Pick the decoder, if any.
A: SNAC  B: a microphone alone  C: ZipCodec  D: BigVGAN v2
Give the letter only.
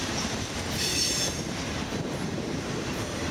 D